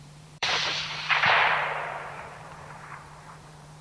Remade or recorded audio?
remade